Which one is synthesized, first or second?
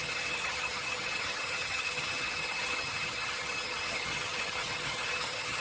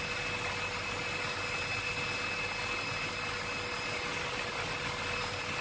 first